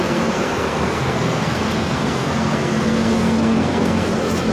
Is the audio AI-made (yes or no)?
yes